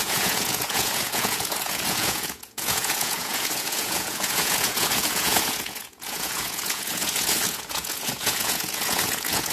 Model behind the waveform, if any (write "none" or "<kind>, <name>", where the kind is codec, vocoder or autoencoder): vocoder, Vocos